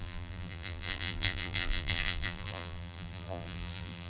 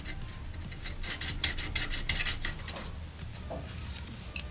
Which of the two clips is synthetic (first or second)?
first